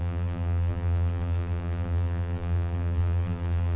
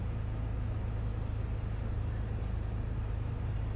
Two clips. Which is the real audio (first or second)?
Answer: second